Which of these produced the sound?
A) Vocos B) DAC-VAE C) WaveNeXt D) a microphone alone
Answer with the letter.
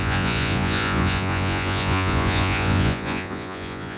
A